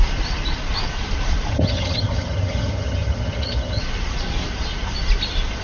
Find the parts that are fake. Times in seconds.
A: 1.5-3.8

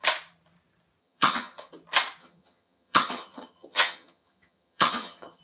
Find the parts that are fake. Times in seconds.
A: 1.0-1.7; 2.2-5.4